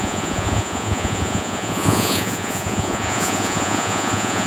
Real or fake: fake